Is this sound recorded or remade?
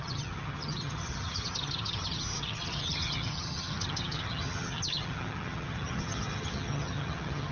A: remade